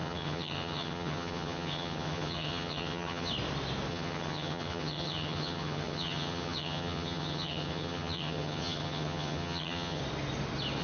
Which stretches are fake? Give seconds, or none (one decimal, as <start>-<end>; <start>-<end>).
0.0-3.3; 3.9-10.0